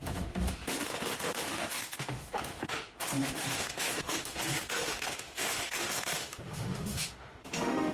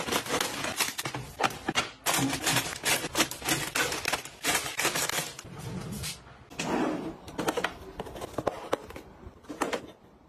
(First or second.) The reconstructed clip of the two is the first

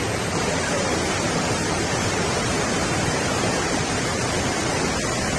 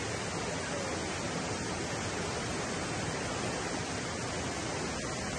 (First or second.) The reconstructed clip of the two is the first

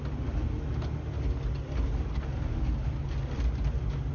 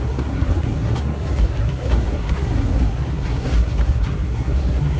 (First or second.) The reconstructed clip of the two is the second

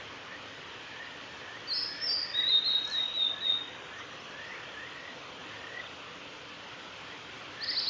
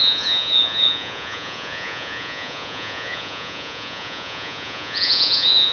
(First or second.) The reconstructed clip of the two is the second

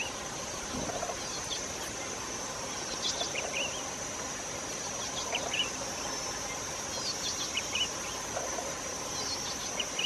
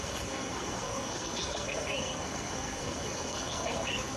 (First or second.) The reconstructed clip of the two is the second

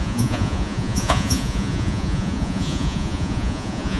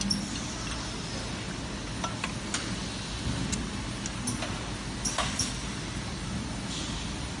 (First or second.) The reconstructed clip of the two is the first